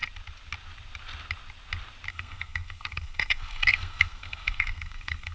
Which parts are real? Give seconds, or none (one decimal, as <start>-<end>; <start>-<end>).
0.0-2.1